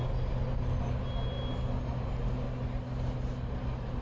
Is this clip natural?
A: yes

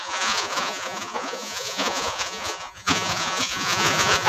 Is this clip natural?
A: no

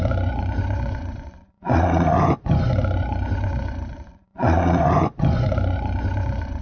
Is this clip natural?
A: no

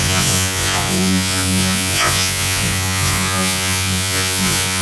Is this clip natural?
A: no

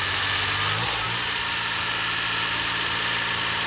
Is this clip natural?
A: yes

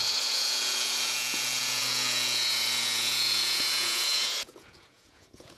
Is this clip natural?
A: no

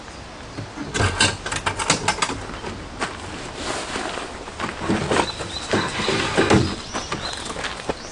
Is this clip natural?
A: yes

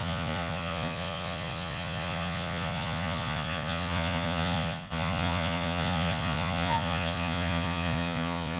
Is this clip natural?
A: no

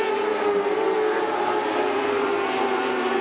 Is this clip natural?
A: yes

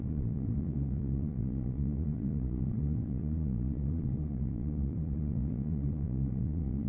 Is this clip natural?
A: no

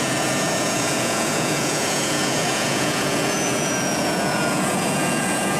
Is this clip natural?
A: no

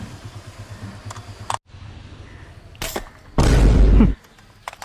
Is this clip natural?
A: yes